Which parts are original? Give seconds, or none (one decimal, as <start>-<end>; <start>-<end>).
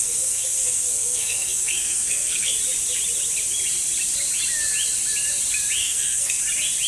2.5-5.8; 6.4-6.9